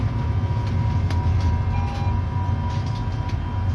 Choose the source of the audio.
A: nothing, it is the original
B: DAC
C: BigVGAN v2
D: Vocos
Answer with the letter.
A